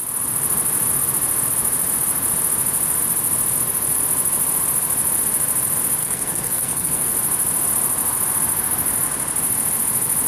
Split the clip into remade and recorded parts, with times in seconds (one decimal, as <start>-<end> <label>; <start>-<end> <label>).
0.0-6.0 recorded; 6.0-7.1 remade; 7.1-10.3 recorded